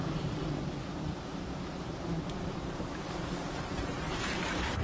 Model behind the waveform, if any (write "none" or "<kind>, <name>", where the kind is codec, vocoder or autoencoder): vocoder, BigVGAN v2